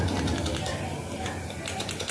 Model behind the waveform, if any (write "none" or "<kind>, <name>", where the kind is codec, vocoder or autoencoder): none